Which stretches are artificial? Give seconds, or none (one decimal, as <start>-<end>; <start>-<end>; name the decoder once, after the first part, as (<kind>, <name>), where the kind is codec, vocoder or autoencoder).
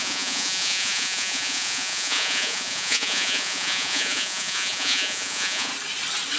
0.0-5.7 (vocoder, Vocos)